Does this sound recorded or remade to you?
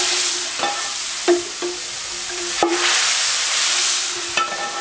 recorded